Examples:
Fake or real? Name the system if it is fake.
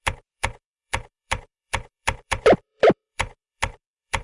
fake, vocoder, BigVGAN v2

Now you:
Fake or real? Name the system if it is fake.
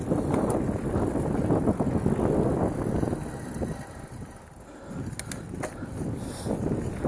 real